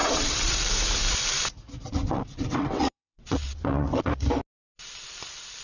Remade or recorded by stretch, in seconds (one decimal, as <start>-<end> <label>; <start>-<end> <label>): 0.0-0.6 remade; 0.6-2.0 recorded; 2.0-4.1 remade; 4.1-5.6 recorded